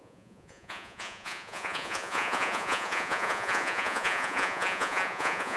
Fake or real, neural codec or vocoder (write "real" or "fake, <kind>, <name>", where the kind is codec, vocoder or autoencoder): fake, vocoder, Vocos